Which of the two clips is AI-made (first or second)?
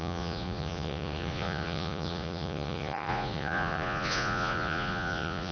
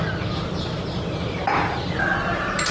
first